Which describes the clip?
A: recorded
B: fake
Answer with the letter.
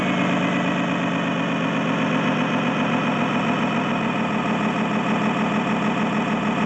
A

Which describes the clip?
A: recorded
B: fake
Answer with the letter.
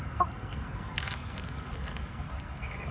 B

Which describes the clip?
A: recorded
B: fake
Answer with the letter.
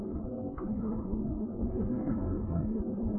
B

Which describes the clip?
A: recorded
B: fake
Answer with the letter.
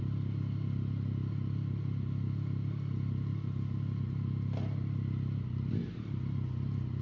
A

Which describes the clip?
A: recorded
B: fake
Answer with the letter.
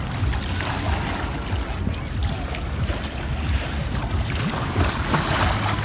A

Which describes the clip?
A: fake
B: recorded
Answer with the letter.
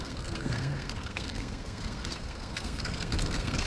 A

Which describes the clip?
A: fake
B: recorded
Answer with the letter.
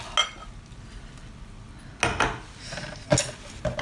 B